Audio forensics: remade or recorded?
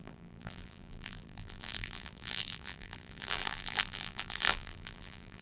remade